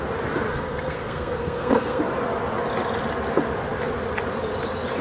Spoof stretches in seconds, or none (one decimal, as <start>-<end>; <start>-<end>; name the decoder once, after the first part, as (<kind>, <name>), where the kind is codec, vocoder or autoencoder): 0.5-2.0 (codec, SNAC)

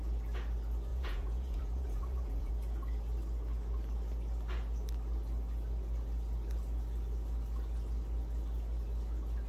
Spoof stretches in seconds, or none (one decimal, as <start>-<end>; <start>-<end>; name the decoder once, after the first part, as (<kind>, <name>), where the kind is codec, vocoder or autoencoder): 0.9-2.5 (vocoder, Vocos)

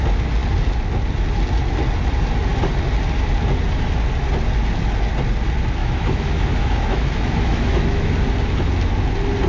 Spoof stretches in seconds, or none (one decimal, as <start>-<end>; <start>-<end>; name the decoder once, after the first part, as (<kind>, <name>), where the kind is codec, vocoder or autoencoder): 5.8-8.1 (autoencoder, DAC-VAE)

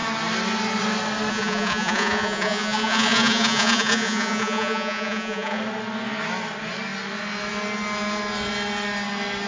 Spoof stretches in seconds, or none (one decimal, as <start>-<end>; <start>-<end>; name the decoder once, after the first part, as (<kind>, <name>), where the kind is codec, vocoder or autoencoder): 1.3-5.6 (vocoder, Vocos)

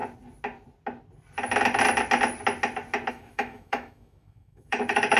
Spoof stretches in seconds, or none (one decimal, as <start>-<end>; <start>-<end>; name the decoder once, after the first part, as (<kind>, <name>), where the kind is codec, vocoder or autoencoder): 3.1-5.2 (autoencoder, DAC-VAE)